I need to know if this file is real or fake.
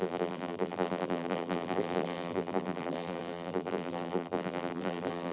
fake